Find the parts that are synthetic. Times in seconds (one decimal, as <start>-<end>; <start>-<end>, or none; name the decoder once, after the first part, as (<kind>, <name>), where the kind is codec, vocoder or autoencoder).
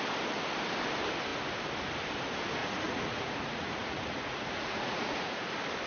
2.6-5.5 (vocoder, Vocos)